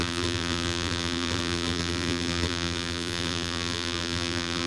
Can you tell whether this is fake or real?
fake